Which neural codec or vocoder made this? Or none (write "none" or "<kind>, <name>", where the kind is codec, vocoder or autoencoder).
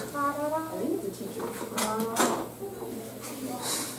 none